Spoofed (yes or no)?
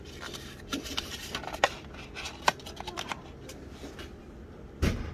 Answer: yes